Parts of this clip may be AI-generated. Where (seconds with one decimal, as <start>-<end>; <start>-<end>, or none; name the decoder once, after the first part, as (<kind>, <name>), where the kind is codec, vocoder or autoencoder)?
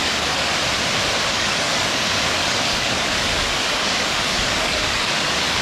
0.0-0.5 (codec, DAC); 1.3-5.6